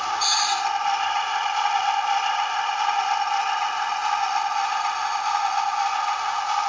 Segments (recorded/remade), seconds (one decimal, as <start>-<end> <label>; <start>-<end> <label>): 0.0-6.7 recorded